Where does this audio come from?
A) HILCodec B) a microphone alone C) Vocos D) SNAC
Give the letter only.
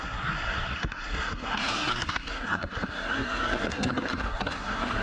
D